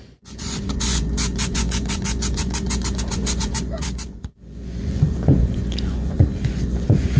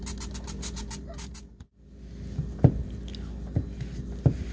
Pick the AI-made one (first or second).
first